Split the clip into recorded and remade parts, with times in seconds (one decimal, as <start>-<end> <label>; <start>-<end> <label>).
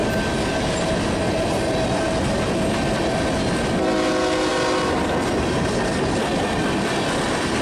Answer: 0.0-7.6 recorded